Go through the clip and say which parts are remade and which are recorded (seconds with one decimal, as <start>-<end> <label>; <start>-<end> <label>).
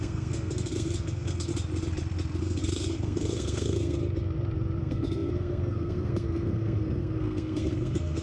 0.0-1.5 remade; 1.5-2.4 recorded; 2.4-4.0 remade; 4.0-4.8 recorded; 4.8-8.2 remade